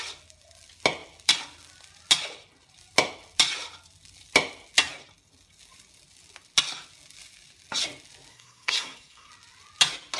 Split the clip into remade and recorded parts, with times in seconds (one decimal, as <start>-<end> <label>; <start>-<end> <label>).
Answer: 0.0-8.3 recorded; 8.3-9.3 remade; 9.3-10.2 recorded